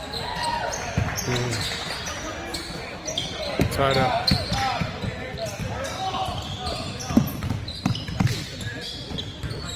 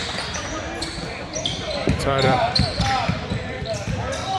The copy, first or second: second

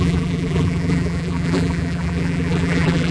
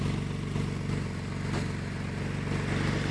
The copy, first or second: first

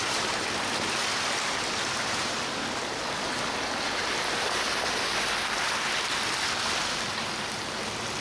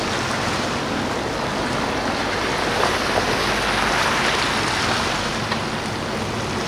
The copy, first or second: first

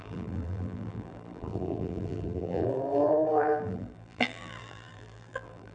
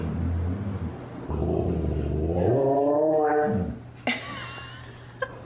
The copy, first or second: first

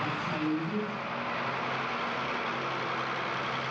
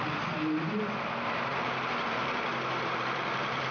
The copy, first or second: second